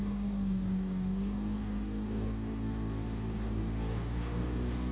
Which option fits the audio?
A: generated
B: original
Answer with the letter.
A